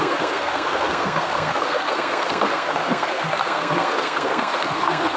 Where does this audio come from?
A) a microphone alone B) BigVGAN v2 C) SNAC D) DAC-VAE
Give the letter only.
C